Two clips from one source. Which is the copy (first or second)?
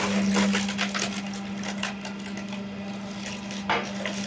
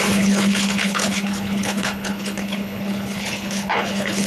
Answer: second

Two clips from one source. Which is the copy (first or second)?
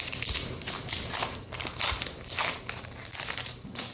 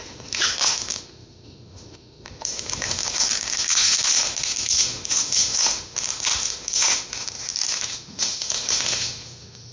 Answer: second